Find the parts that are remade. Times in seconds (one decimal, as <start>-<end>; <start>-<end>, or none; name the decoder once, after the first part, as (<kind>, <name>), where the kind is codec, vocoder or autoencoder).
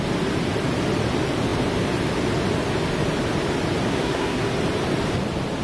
3.9-4.5 (codec, SNAC)